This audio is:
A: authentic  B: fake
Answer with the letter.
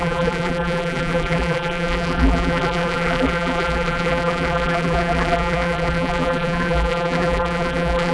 B